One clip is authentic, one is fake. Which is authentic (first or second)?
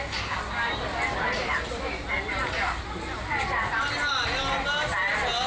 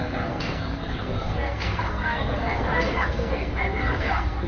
first